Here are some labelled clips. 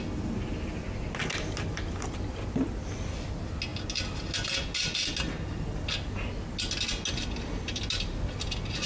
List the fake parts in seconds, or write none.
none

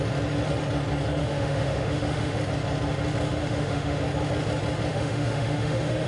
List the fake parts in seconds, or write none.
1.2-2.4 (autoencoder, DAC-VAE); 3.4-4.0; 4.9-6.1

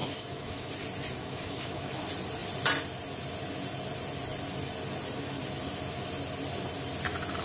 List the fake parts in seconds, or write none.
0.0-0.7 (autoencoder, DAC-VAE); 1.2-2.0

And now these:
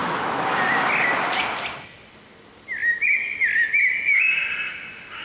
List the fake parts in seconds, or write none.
0.0-0.6 (autoencoder, DAC-VAE)

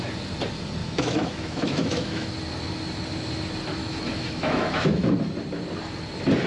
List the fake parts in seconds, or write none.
0.8-2.3 (autoencoder, DAC-VAE); 3.8-5.1